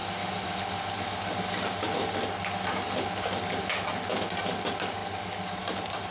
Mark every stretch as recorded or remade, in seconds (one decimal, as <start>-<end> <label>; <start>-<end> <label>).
0.0-6.1 recorded